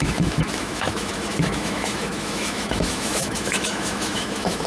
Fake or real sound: fake